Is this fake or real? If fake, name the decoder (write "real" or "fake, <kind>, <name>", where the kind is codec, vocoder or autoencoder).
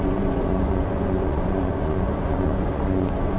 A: fake, vocoder, Vocos